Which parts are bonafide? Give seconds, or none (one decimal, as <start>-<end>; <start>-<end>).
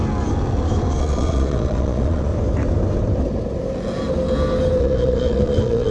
0.0-1.0; 2.3-4.8